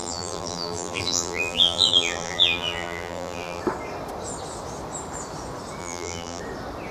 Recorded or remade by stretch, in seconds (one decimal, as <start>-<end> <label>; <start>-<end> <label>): 0.0-3.6 remade; 3.6-5.8 recorded; 5.8-6.4 remade; 6.4-6.9 recorded